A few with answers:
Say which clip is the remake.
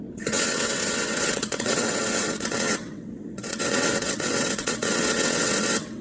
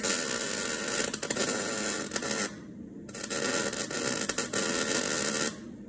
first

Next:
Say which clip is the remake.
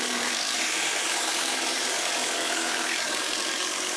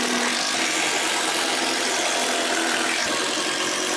first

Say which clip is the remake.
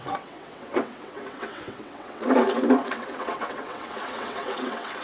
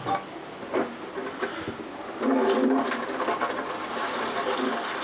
first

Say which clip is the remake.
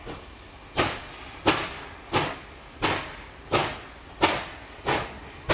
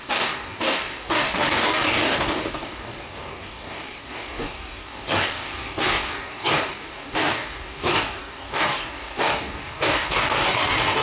second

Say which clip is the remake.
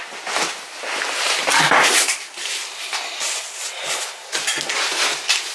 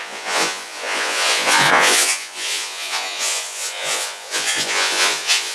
second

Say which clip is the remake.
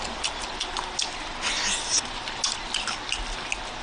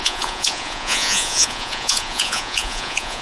second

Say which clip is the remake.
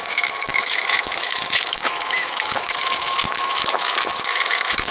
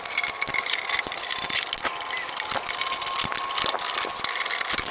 first